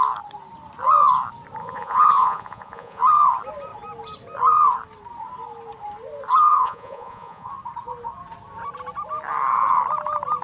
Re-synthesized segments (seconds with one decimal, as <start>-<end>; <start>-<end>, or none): 1.6-3.0; 6.5-7.5